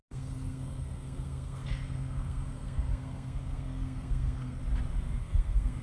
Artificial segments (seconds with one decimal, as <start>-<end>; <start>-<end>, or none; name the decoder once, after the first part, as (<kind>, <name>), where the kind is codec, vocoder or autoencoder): 0.0-4.6 (codec, SNAC); 5.2-5.8